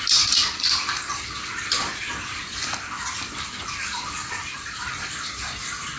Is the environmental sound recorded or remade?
remade